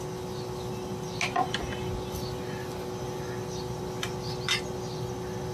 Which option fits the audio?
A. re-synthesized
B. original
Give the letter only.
B